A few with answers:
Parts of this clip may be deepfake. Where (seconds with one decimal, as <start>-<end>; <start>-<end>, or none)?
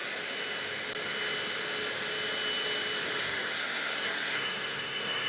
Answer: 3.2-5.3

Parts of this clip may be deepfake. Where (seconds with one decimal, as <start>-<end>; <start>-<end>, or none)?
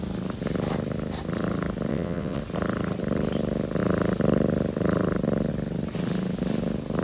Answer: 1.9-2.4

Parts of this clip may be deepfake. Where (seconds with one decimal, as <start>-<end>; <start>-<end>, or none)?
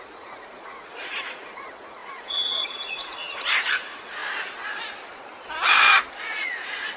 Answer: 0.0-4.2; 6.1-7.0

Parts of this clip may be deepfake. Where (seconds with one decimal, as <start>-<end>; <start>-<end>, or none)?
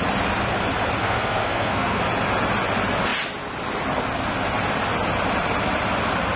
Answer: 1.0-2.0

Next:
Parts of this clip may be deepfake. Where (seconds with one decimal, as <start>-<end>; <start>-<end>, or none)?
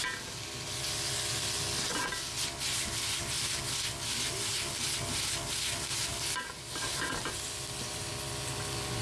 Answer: 6.1-8.1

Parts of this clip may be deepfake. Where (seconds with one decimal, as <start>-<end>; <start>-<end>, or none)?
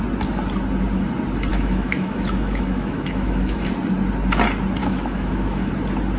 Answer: 1.5-3.7; 4.8-5.7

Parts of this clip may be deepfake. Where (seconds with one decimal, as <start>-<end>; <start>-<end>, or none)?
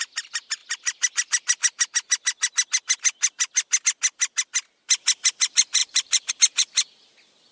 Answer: 5.8-6.3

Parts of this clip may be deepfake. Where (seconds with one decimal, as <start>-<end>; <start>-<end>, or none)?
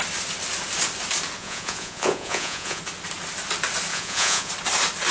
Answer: 1.4-2.8; 3.9-4.5